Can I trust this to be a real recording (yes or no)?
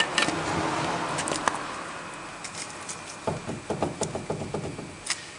yes